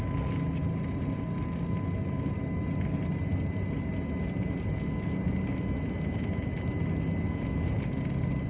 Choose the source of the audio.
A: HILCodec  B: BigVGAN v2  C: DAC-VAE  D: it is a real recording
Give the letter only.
D